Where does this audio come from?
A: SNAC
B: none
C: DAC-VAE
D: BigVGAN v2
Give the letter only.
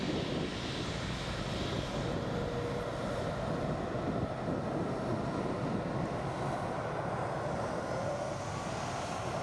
B